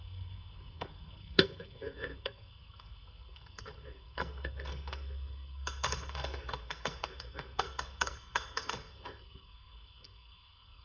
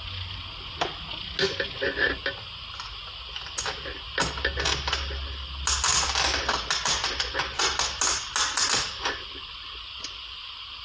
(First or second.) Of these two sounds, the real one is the second